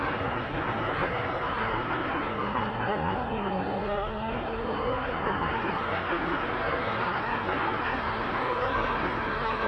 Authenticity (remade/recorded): remade